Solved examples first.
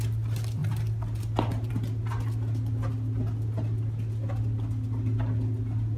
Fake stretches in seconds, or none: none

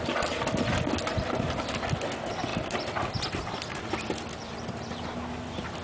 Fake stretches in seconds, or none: 2.5-3.1 (vocoder, BigVGAN v2)